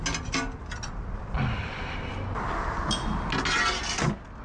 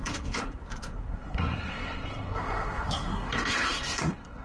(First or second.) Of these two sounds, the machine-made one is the second